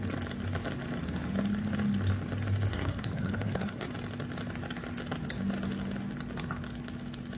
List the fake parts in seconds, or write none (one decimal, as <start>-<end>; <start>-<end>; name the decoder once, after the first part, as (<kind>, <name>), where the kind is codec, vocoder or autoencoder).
2.7-3.9 (codec, SNAC)